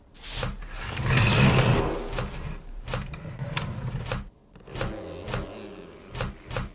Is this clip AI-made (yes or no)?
no